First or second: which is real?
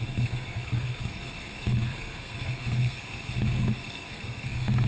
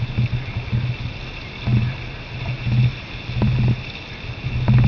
second